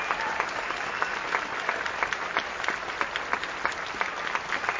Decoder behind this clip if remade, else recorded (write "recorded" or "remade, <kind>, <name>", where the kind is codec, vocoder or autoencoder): recorded